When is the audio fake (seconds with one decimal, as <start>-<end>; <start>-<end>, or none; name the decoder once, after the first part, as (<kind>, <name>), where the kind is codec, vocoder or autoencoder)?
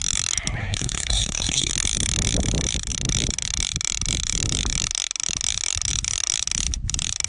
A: 0.6-1.7 (codec, SNAC)